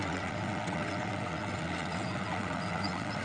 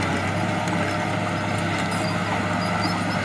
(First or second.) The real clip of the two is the second